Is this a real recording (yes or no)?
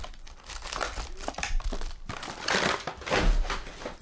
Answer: yes